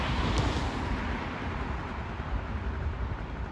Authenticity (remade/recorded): recorded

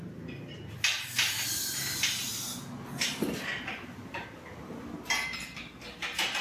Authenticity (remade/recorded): recorded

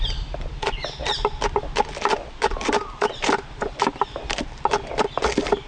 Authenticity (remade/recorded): recorded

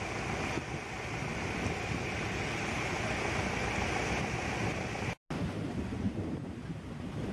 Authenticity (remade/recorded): recorded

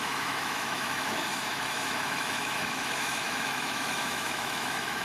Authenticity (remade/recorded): remade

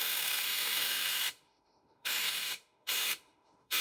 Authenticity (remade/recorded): remade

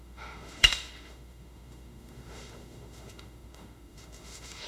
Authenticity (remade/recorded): remade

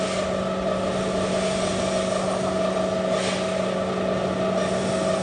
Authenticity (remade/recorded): recorded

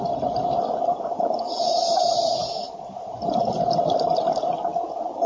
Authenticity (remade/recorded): recorded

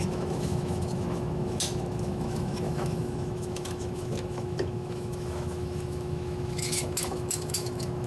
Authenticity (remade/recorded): remade